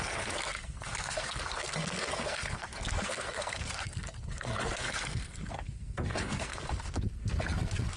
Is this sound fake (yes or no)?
yes